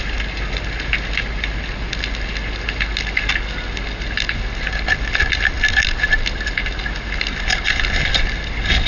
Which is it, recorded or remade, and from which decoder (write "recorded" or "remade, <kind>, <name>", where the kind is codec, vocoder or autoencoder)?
recorded